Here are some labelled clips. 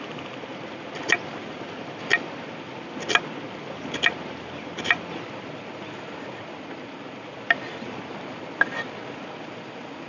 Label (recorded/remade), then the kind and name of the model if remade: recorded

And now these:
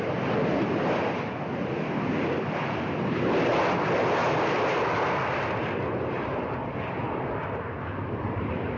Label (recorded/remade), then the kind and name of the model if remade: recorded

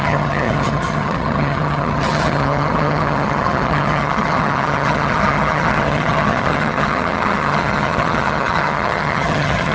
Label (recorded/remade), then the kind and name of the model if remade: remade, vocoder, HiFi-GAN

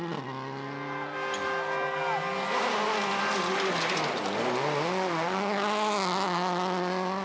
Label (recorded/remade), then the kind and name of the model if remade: recorded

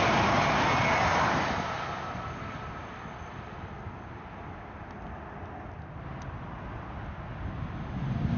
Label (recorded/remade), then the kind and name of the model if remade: recorded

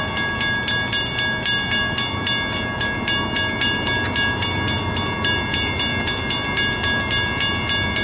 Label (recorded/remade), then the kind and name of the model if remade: recorded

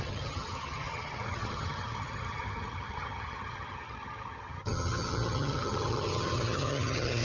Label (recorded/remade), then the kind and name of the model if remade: remade, vocoder, HiFi-GAN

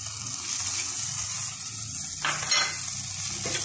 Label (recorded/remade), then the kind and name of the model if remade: recorded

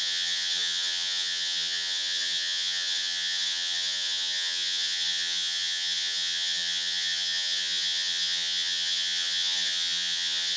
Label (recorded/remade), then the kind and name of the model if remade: remade, vocoder, HiFi-GAN